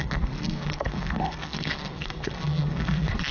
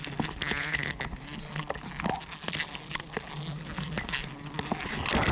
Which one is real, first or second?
second